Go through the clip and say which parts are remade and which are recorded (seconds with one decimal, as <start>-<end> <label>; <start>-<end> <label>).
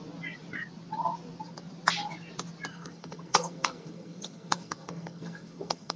0.0-2.7 recorded; 2.7-6.0 remade